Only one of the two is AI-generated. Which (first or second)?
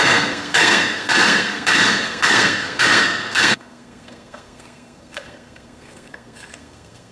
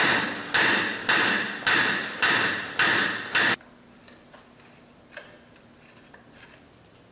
first